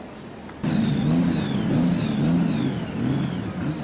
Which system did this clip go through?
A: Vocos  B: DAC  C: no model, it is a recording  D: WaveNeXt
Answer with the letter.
C